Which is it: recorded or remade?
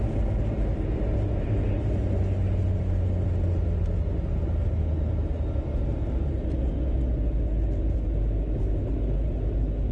recorded